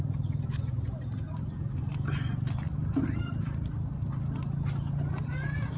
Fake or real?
real